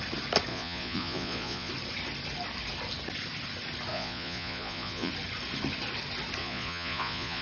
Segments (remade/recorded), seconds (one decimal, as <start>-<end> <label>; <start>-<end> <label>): 0.0-0.5 recorded; 0.5-1.7 remade; 1.7-3.9 recorded; 3.9-5.1 remade; 5.1-6.4 recorded; 6.4-7.4 remade